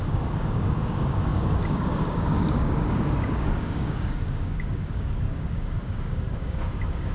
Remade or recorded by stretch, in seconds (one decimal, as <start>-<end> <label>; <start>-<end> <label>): 0.0-7.1 remade